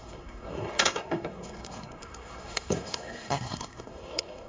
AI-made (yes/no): yes